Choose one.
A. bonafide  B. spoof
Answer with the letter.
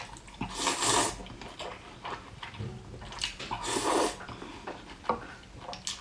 A